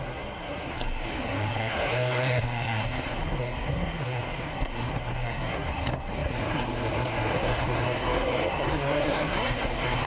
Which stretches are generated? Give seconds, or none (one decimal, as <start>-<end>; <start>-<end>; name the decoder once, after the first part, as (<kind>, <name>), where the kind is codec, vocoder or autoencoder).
0.0-10.1 (codec, SNAC)